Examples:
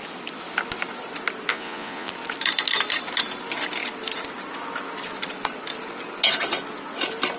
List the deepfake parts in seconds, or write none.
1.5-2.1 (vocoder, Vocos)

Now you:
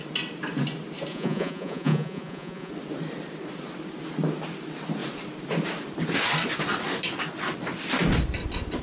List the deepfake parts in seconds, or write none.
1.1-2.7 (vocoder, Vocos)

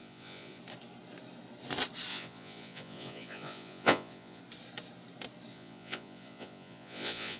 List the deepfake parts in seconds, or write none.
0.0-0.6 (vocoder, Vocos); 2.1-4.4; 5.5-7.4

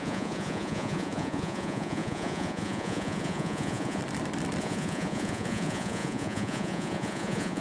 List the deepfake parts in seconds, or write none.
0.0-4.0 (vocoder, Vocos); 4.6-7.6

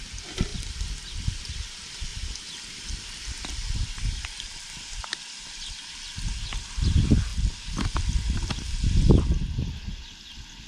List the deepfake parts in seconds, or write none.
none

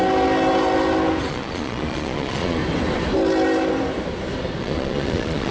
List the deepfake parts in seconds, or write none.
1.3-2.6 (vocoder, Vocos); 4.6-5.5